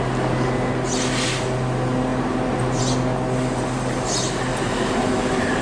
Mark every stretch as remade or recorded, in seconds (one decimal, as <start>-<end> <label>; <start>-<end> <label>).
0.0-4.5 recorded; 4.5-5.6 remade